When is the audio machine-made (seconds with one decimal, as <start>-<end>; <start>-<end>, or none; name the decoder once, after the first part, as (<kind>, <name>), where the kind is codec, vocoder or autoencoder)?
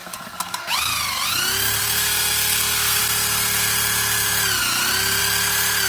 0.0-0.7 (codec, SNAC); 1.8-3.0